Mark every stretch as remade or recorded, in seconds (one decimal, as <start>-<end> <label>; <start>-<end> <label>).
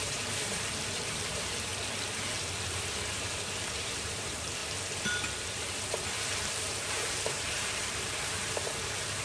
0.0-1.7 remade; 1.7-3.9 recorded; 3.9-4.6 remade; 4.6-6.6 recorded; 6.6-9.2 remade